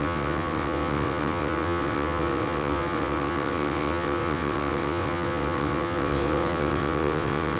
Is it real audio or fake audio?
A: fake